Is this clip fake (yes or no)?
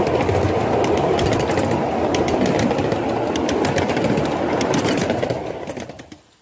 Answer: no